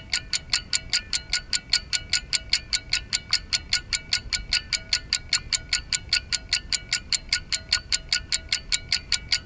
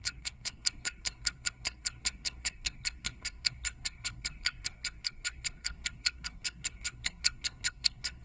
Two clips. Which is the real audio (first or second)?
first